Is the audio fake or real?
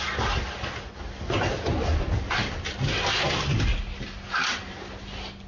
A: real